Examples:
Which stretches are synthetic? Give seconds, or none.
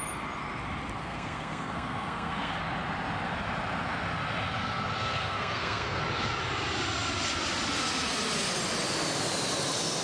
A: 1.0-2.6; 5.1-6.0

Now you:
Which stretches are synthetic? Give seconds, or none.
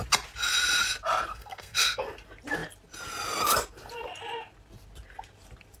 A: 1.3-2.0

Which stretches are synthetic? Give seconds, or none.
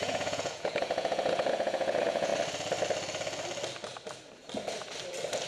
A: 0.0-2.3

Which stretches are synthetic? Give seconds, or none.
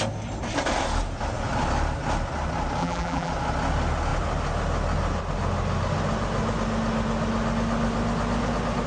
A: 2.8-3.3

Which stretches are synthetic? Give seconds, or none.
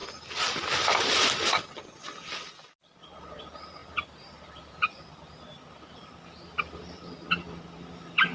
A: 1.1-6.0; 6.7-8.3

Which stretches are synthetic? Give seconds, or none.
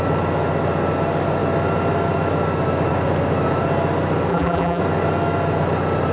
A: 4.3-4.8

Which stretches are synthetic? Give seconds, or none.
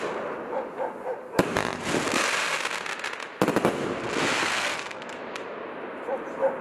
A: 4.4-5.2